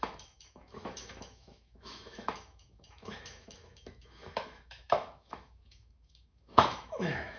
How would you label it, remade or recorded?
remade